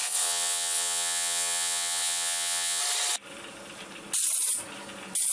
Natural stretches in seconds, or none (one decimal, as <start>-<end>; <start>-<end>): 2.8-5.3